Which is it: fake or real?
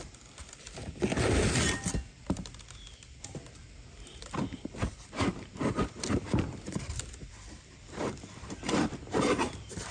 fake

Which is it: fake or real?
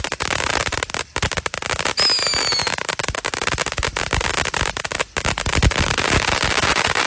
real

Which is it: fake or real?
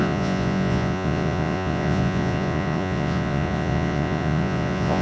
fake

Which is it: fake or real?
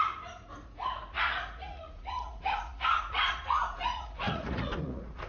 fake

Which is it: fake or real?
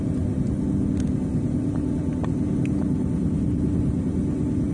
real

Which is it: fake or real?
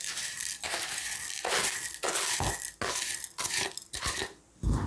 real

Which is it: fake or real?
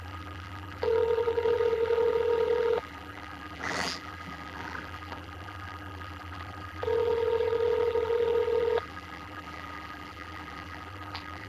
fake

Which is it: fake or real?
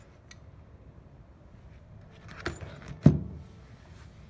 real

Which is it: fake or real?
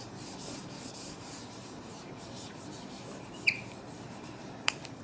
fake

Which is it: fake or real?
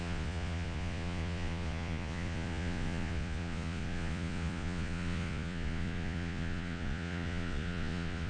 fake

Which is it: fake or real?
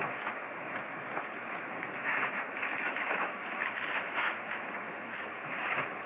fake